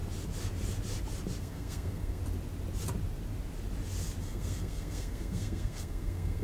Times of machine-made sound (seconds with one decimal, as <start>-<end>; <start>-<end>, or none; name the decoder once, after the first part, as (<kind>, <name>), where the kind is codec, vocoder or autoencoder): 1.4-2.2 (codec, SNAC); 4.2-6.4